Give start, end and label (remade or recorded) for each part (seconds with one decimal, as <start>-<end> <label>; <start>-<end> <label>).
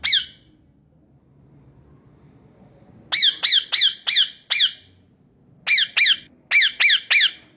0.0-7.6 recorded